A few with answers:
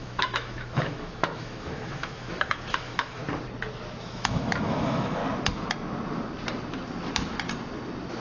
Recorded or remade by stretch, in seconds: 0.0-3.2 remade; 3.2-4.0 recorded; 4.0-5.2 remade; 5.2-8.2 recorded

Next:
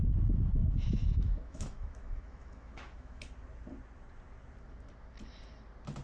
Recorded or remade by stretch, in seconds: 0.0-0.6 recorded; 0.6-3.2 remade; 3.2-6.0 recorded

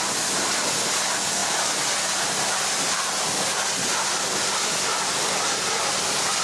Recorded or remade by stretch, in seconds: 0.0-6.4 recorded

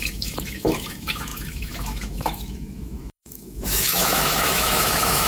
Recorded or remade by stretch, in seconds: 0.0-5.3 remade

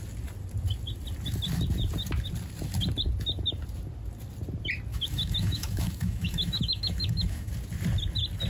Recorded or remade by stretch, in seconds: 0.0-4.9 recorded; 4.9-7.5 remade; 7.5-8.5 recorded

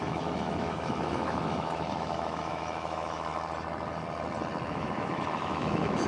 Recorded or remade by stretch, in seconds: 0.0-3.3 remade; 3.3-4.7 recorded; 4.7-6.1 remade

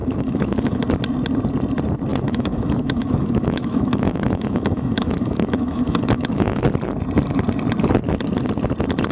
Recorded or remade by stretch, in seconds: 0.0-0.8 remade; 0.8-2.1 recorded; 2.1-6.6 remade; 6.6-9.1 recorded